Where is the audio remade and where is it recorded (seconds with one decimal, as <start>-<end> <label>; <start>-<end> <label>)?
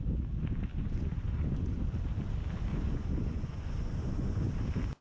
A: 0.0-0.7 recorded; 0.7-1.8 remade; 1.8-2.7 recorded; 2.7-4.5 remade; 4.5-5.0 recorded